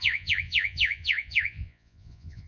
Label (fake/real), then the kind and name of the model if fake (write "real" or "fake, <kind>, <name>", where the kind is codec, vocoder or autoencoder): fake, vocoder, Vocos